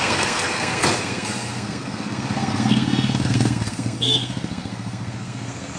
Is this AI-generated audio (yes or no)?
yes